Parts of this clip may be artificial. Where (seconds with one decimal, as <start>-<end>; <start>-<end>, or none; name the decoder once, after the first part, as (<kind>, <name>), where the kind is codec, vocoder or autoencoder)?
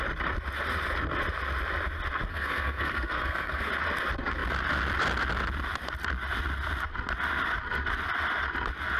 2.3-3.7 (codec, SNAC)